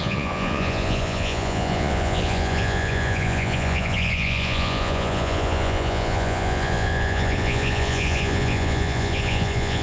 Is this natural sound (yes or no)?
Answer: no